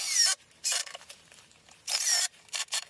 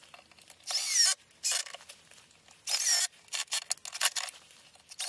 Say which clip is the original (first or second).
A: second